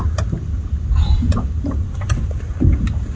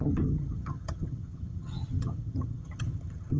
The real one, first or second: first